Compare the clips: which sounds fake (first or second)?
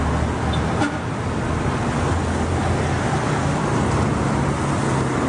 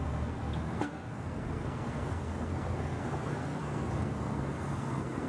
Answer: second